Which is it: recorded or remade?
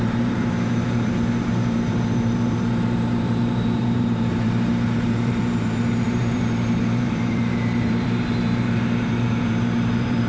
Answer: remade